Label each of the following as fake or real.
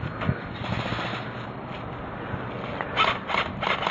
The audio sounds real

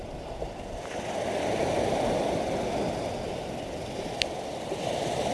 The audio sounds real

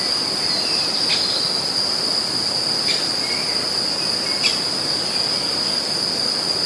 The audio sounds real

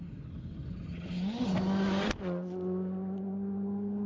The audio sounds real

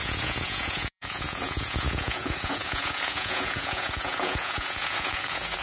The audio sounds fake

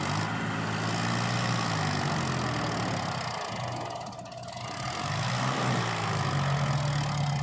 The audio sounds real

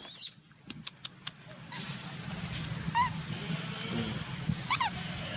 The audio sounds real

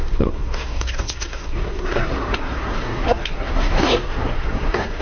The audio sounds fake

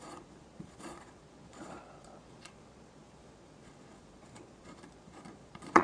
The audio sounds fake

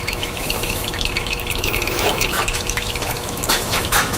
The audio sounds fake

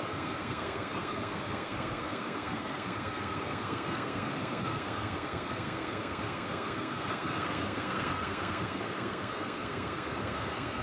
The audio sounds fake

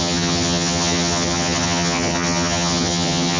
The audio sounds fake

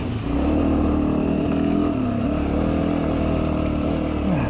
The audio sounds real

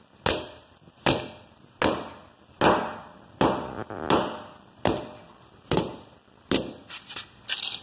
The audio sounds real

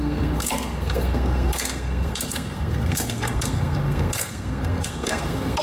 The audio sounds fake